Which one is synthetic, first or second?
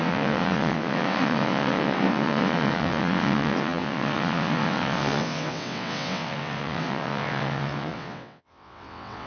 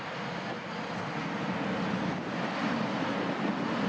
first